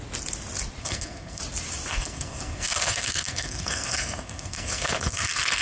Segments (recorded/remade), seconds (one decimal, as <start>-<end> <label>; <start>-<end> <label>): 0.0-0.8 recorded; 0.8-1.4 remade; 1.4-1.9 recorded; 1.9-5.6 remade